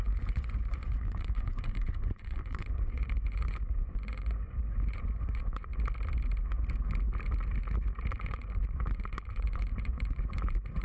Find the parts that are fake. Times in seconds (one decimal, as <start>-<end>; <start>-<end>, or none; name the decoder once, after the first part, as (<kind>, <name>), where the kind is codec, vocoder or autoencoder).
0.0-5.7 (vocoder, Vocos); 8.1-10.8